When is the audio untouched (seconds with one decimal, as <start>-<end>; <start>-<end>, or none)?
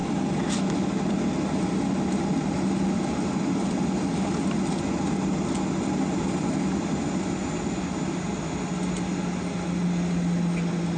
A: 0.0-11.0